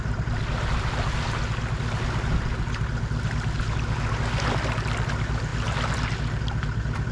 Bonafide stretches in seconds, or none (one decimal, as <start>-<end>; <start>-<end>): 0.0-7.1